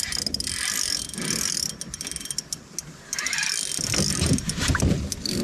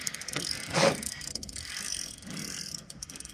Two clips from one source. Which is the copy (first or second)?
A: second